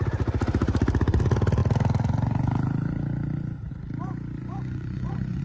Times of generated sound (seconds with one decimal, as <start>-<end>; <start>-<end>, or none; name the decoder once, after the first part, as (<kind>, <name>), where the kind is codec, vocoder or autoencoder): 4.4-5.4 (vocoder, Vocos)

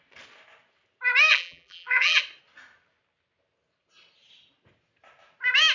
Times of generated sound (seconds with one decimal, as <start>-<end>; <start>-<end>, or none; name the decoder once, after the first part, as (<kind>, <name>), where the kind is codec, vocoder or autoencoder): 1.3-2.2 (vocoder, BigVGAN v2)